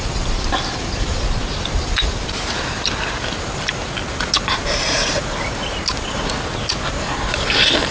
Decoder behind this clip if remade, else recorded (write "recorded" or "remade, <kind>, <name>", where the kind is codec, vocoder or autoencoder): recorded